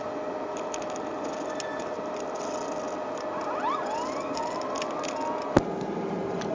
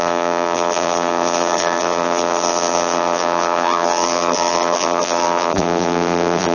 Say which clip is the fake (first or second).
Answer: second